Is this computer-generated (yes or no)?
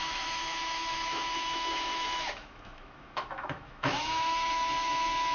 yes